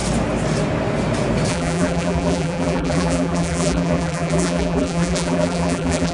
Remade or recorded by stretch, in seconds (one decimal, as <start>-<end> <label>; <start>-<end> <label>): 0.0-1.5 recorded; 1.5-6.1 remade